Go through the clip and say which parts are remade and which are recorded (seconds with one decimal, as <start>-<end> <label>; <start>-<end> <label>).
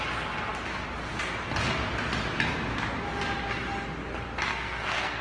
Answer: 0.0-4.5 recorded; 4.5-5.2 remade